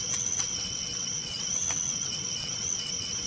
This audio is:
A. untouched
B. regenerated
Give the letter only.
B